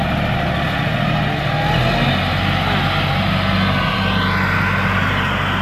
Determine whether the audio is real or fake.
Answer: real